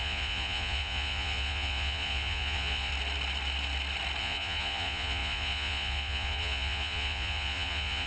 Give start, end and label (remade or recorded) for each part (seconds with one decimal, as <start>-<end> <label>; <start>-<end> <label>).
0.0-2.9 remade; 2.9-4.2 recorded; 4.2-8.1 remade